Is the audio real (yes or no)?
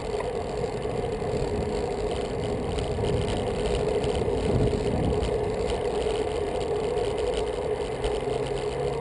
yes